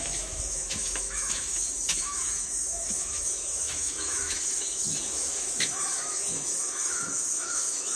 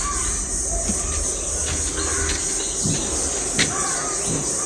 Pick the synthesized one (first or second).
first